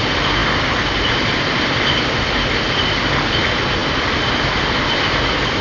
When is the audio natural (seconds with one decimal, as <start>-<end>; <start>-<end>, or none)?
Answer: 0.0-5.6